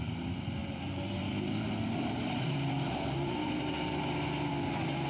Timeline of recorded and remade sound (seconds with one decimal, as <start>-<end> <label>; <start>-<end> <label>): 0.0-0.6 recorded; 0.6-3.7 remade; 3.7-5.1 recorded